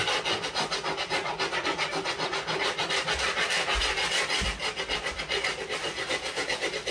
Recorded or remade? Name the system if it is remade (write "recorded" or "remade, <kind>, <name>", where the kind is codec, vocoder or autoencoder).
recorded